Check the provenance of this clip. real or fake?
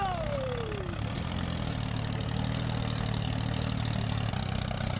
real